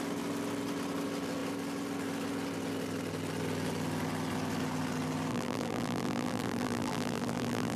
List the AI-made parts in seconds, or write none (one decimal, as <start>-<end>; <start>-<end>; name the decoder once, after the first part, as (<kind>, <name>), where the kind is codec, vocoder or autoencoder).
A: 5.3-7.8 (vocoder, BigVGAN v2)